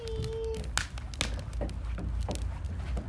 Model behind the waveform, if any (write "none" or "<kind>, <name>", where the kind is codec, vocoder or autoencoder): none